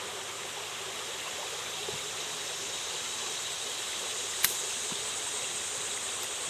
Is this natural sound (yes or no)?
yes